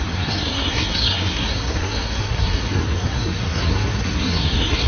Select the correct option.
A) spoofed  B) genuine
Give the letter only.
A